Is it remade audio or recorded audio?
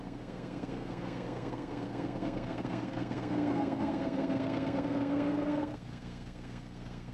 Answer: remade